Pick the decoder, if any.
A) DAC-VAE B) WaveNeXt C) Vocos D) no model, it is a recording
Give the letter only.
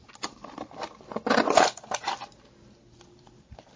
D